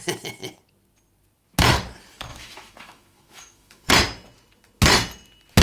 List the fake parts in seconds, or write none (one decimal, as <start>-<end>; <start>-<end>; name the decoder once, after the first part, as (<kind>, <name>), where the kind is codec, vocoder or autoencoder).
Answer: 2.3-3.9 (autoencoder, DAC-VAE)